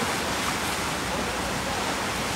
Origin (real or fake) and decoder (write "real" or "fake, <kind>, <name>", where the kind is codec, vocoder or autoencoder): real